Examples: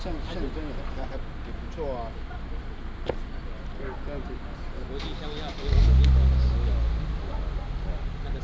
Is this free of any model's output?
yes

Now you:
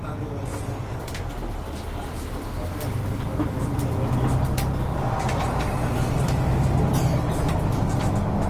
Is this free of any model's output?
yes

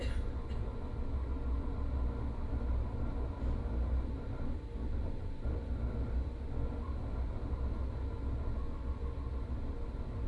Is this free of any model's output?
yes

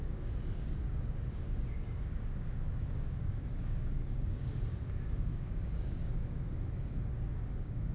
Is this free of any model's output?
no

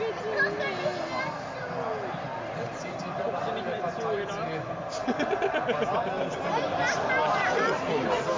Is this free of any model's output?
yes